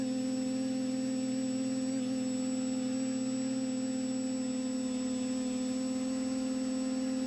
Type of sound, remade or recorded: recorded